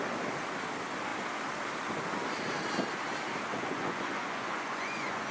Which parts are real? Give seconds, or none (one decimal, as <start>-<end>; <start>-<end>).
0.0-3.5